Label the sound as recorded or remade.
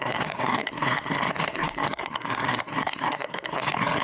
remade